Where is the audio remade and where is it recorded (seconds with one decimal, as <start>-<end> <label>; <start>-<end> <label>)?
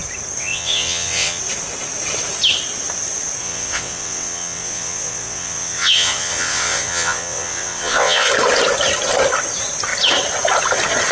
0.0-0.4 recorded; 0.4-1.4 remade; 1.4-3.4 recorded; 3.4-8.3 remade; 8.3-11.1 recorded